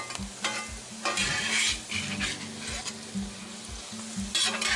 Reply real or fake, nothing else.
real